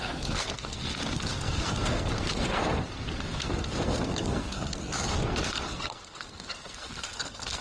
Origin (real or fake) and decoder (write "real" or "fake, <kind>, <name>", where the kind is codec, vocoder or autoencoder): fake, codec, SNAC